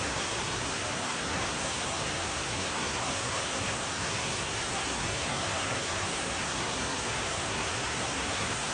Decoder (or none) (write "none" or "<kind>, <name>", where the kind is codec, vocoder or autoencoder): codec, SNAC